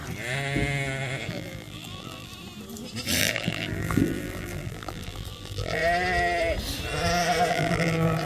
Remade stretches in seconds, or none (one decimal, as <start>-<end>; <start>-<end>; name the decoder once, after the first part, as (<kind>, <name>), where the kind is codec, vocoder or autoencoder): 1.3-2.3 (vocoder, BigVGAN v2); 3.2-5.8; 7.5-8.3